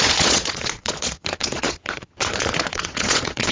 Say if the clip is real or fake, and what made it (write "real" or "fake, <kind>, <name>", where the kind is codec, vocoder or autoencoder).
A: fake, vocoder, Vocos